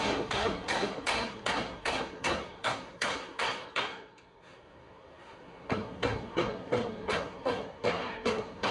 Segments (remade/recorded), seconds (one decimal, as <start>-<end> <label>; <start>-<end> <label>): 0.0-8.7 remade